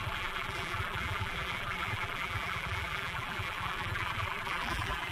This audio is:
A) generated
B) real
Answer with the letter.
A